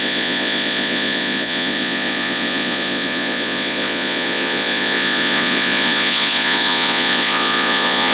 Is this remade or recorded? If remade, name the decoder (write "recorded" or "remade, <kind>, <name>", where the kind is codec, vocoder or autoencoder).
remade, vocoder, Vocos